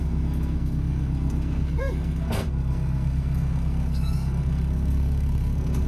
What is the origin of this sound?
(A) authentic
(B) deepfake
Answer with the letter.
B